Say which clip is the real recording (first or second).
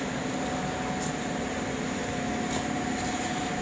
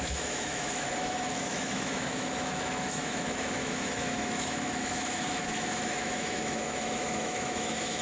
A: first